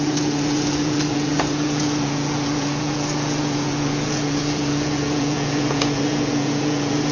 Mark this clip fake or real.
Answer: fake